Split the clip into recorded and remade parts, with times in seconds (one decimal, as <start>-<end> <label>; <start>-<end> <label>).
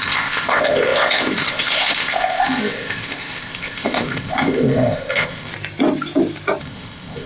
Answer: 0.0-5.5 remade; 5.5-6.6 recorded; 6.6-7.3 remade